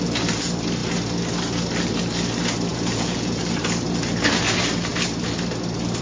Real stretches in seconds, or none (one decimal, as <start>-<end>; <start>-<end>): 0.0-2.7; 3.4-6.0